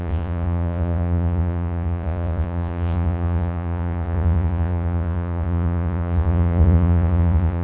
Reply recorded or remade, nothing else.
remade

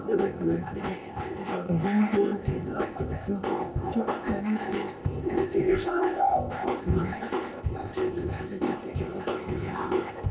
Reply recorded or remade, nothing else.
remade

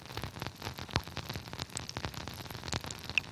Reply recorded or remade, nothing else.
recorded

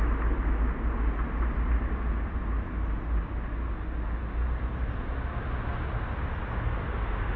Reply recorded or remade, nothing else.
recorded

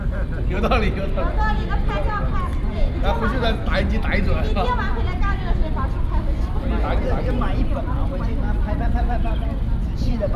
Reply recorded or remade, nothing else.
recorded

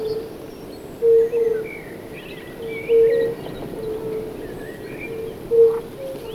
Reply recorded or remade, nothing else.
recorded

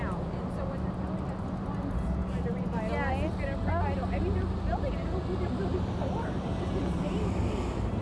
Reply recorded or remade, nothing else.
recorded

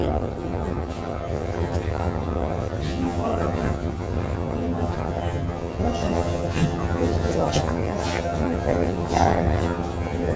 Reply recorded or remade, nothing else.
remade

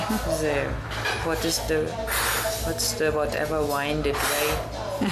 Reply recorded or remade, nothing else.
recorded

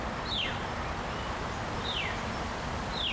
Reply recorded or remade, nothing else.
recorded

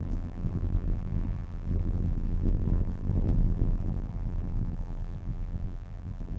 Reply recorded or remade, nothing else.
remade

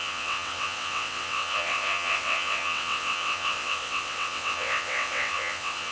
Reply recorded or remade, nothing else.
remade